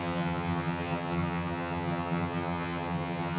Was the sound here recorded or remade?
remade